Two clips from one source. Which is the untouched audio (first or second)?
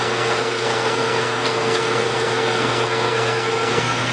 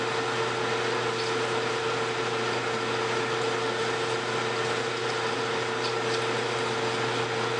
second